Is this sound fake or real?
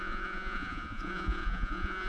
fake